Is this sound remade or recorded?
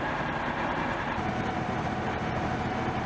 remade